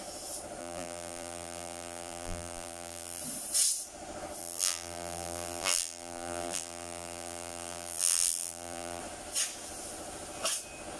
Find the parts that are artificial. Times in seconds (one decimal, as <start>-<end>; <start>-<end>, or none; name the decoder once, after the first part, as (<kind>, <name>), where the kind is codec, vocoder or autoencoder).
0.6-3.2 (vocoder, BigVGAN v2); 4.4-9.0